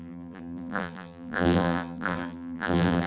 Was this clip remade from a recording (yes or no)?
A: yes